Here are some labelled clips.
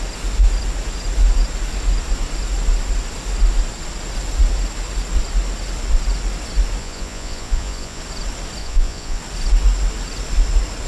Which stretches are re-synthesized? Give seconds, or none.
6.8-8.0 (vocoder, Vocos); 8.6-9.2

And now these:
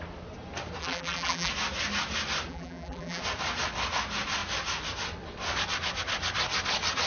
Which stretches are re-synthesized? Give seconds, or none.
0.8-1.5 (vocoder, BigVGAN v2); 2.5-3.2

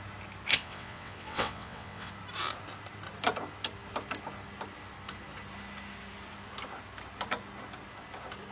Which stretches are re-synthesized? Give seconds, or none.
0.5-2.1 (vocoder, WaveNeXt)

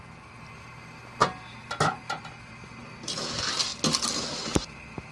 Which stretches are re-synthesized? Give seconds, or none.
none

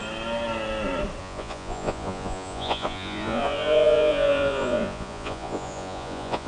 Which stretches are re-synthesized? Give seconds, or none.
1.2-6.5 (vocoder, Vocos)